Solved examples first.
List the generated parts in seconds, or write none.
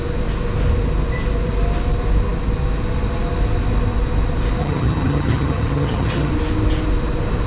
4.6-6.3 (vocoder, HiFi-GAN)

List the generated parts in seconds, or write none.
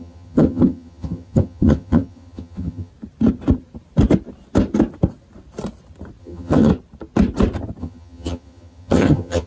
0.0-2.9 (vocoder, HiFi-GAN); 6.2-6.7; 7.8-9.5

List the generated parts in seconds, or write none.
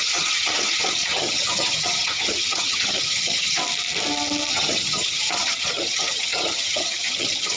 0.0-3.6 (vocoder, HiFi-GAN); 4.5-7.6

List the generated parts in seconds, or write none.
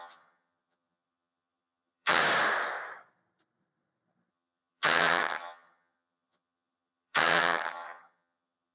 0.0-2.2 (vocoder, HiFi-GAN); 4.3-8.7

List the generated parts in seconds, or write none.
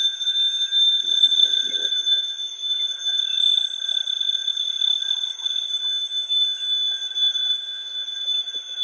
1.0-1.9 (vocoder, HiFi-GAN); 3.2-5.7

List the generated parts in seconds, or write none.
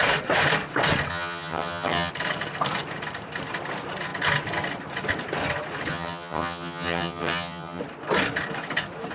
1.1-2.1 (vocoder, HiFi-GAN); 5.9-7.8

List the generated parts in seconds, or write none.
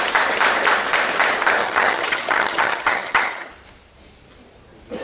1.6-3.5 (vocoder, HiFi-GAN)